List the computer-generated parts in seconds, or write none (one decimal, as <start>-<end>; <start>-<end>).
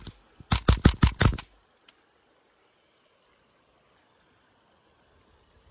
none